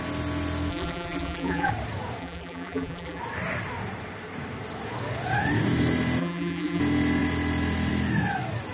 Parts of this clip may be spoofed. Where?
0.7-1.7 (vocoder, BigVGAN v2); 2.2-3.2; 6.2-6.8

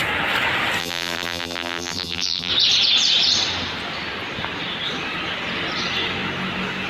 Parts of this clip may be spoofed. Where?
0.8-2.5 (vocoder, BigVGAN v2)

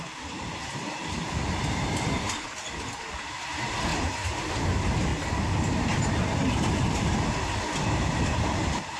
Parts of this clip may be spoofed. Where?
0.0-5.1 (vocoder, BigVGAN v2); 7.0-9.0

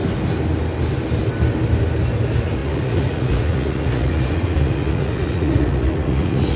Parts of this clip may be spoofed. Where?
2.6-6.6 (vocoder, Vocos)

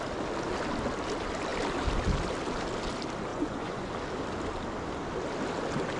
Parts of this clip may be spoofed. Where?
3.3-3.9 (vocoder, Vocos)

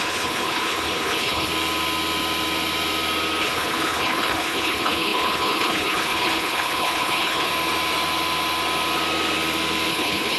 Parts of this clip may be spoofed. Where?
0.0-1.5 (codec, HILCodec); 3.4-7.5; 9.9-10.4

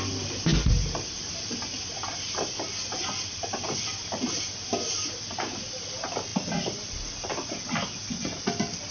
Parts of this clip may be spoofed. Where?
none

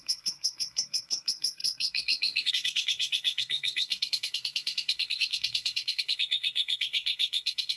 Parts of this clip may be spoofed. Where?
0.0-7.8 (codec, SNAC)